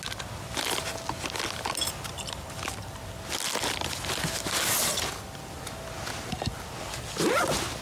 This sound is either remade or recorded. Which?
recorded